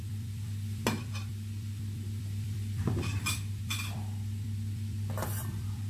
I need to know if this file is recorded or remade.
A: remade